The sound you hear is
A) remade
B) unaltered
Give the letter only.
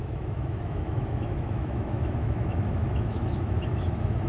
A